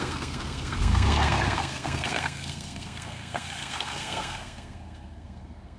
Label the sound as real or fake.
fake